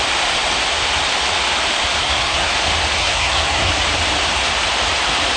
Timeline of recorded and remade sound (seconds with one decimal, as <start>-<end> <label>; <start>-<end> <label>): 0.0-2.0 recorded; 2.0-2.5 remade; 2.5-3.0 recorded; 3.0-3.7 remade; 3.7-5.4 recorded